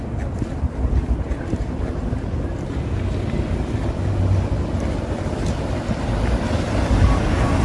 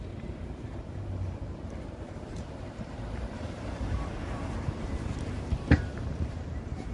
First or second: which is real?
first